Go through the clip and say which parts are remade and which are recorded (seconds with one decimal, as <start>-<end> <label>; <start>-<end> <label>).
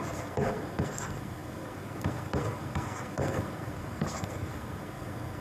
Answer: 0.0-5.4 remade